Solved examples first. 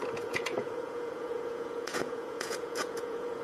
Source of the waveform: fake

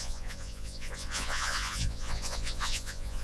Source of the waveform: fake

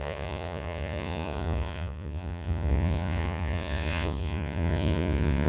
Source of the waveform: fake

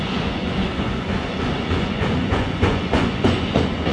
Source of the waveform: fake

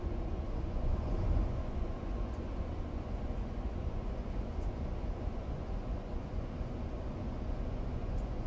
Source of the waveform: fake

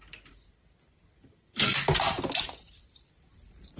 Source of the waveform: real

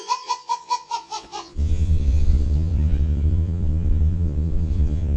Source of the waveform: fake